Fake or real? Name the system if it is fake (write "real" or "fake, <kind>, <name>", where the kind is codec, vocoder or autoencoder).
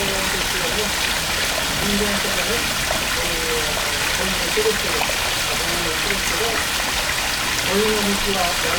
real